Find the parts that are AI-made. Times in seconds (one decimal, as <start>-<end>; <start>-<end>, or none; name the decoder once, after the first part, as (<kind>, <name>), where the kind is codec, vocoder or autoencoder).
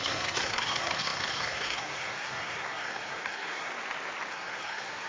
0.0-3.7 (codec, SNAC); 4.3-5.1